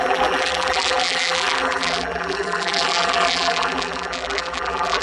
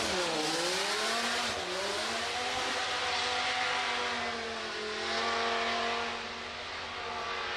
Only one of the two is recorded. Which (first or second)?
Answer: second